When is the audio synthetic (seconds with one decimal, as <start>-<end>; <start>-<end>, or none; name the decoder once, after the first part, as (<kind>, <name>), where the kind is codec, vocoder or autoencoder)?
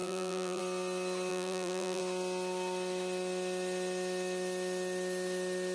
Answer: 0.0-0.6 (vocoder, BigVGAN v2); 1.3-2.0